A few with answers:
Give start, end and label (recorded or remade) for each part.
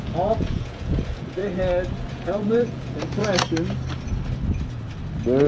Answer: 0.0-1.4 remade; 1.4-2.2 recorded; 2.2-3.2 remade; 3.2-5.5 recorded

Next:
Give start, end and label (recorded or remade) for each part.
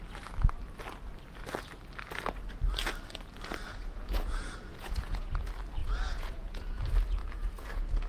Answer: 0.0-3.7 recorded; 3.7-5.3 remade; 5.3-5.8 recorded; 5.8-6.8 remade; 6.8-7.2 recorded; 7.2-8.1 remade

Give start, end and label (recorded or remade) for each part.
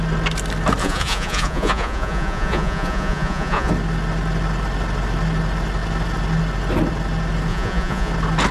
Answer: 0.0-0.8 recorded; 0.8-3.7 remade; 3.7-7.5 recorded; 7.5-8.1 remade; 8.1-8.5 recorded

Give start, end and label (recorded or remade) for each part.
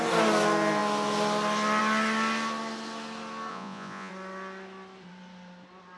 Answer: 0.0-3.5 recorded; 3.5-4.1 remade; 4.1-6.0 recorded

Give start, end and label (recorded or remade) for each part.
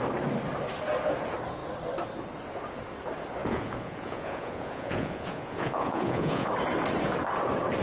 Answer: 0.0-3.4 recorded; 3.4-6.5 remade; 6.5-7.8 recorded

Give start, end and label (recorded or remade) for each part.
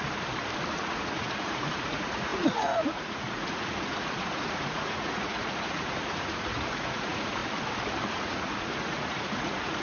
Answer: 0.0-0.7 recorded; 0.7-7.4 remade; 7.4-8.1 recorded; 8.1-9.8 remade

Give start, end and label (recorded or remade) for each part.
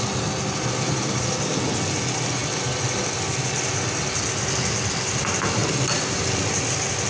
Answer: 0.0-7.1 recorded